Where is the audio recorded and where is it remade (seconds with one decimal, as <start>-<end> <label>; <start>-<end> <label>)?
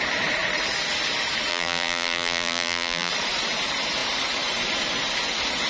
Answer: 0.0-1.5 recorded; 1.5-3.1 remade; 3.1-5.7 recorded